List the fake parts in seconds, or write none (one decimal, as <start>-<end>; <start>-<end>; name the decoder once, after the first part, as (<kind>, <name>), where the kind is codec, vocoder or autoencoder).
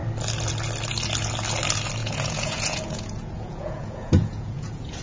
2.0-5.0 (vocoder, Vocos)